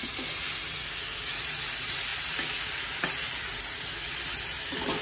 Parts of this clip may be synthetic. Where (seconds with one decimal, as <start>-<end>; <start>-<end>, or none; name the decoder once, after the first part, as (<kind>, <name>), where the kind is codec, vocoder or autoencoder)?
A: none